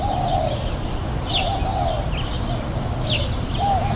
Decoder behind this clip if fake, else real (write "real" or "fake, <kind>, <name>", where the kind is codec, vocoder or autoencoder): real